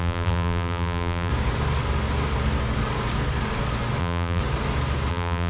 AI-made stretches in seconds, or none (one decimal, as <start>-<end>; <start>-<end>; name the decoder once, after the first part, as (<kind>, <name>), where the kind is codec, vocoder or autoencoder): 0.0-1.3 (vocoder, BigVGAN v2); 4.0-4.4; 5.1-5.5